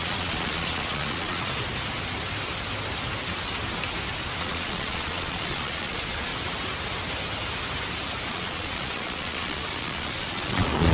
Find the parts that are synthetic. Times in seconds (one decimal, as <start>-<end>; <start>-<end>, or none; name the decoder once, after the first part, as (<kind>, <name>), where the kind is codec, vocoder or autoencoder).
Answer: 0.0-1.5 (vocoder, Vocos); 4.4-6.3; 8.3-10.9